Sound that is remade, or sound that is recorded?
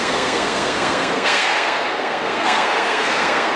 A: remade